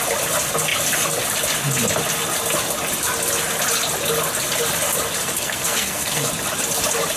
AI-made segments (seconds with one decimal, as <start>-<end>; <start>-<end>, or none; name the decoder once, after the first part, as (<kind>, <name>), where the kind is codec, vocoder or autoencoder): 5.2-6.3 (codec, SNAC)